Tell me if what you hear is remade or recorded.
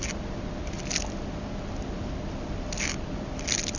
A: recorded